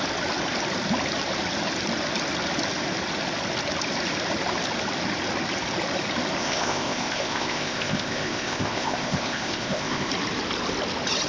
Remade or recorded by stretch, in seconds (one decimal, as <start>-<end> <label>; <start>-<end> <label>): 0.0-6.4 recorded; 6.4-10.1 remade; 10.1-11.3 recorded